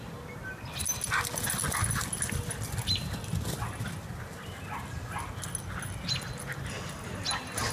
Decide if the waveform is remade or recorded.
recorded